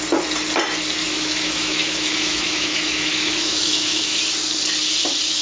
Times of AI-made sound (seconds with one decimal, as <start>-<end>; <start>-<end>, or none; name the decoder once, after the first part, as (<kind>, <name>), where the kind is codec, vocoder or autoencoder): 1.0-4.2 (autoencoder, DAC-VAE)

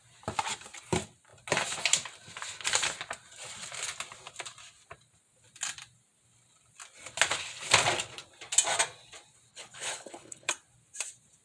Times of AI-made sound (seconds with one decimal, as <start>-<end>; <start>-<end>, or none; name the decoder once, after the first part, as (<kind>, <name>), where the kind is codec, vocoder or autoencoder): 9.5-10.5 (codec, HILCodec)

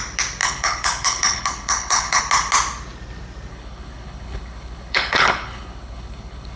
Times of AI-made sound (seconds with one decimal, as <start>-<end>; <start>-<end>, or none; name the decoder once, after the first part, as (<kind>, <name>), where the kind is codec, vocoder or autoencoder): 0.4-2.2 (codec, HILCodec); 3.5-6.6